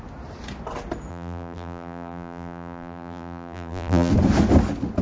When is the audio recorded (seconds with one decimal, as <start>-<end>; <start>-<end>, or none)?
0.0-1.1; 4.1-5.0